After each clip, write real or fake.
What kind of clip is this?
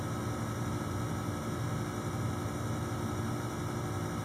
real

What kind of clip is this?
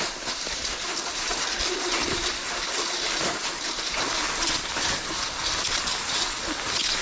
real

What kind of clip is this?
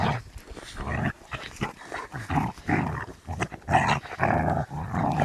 real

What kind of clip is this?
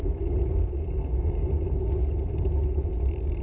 real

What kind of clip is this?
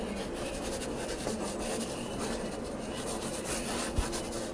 real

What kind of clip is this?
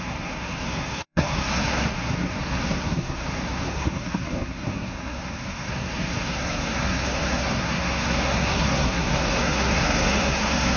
fake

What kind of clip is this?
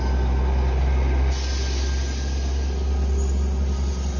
real